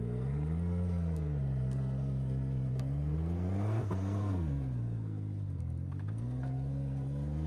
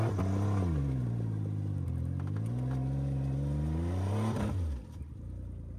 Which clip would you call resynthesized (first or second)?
first